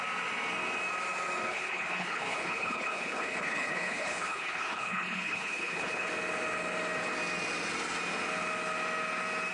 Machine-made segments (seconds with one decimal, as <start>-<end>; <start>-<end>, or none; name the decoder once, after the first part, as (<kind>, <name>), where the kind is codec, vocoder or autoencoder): 1.5-6.1 (codec, HILCodec)